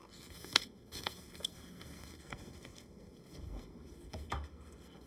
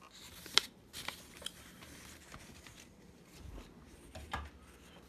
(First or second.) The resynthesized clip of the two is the first